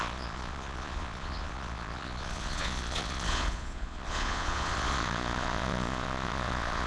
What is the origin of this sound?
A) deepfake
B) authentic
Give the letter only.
A